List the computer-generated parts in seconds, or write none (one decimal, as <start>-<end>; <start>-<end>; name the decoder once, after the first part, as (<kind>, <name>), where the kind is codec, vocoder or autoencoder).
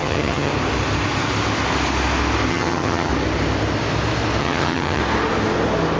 0.0-0.5 (vocoder, HiFi-GAN); 2.5-3.1; 4.4-5.0